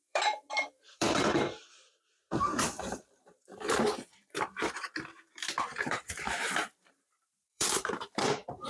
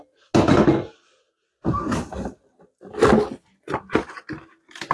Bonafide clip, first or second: second